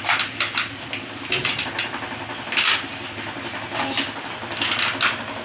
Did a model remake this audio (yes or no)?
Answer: no